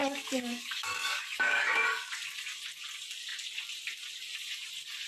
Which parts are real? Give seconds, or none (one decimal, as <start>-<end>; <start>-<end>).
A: 2.1-5.1

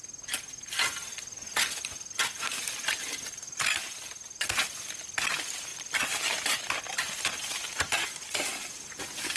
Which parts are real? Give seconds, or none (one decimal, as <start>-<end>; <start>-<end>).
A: 0.0-5.7; 9.0-9.4

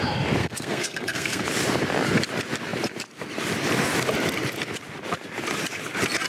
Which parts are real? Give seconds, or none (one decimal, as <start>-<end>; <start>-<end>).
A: 0.0-0.4; 1.4-6.3

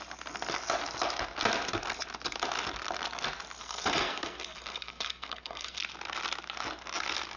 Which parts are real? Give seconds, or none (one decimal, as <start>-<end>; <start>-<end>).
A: 0.0-3.6; 5.8-7.4

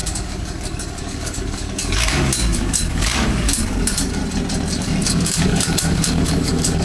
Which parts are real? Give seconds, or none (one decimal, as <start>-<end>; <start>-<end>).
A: 4.2-4.8

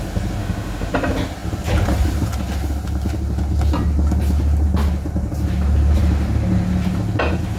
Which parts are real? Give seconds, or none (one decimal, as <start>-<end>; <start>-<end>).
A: 0.0-0.4; 0.9-7.6

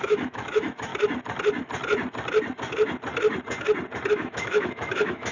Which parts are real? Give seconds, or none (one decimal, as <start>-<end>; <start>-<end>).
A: 0.9-4.1

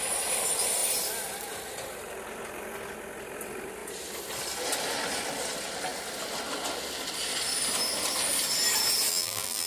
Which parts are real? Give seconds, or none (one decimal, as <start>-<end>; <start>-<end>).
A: 0.0-9.1